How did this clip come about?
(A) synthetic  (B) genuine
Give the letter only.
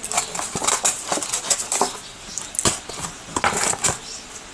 B